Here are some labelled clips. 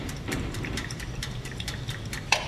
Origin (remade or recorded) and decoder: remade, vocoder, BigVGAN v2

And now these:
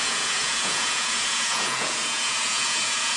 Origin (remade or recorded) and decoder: remade, vocoder, Vocos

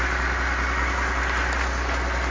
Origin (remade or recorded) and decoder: recorded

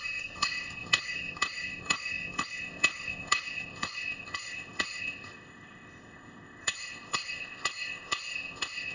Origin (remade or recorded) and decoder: remade, codec, ZipCodec